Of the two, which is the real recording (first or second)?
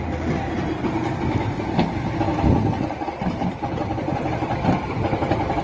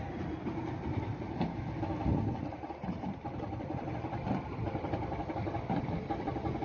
first